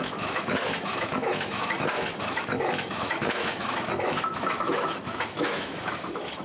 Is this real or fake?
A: fake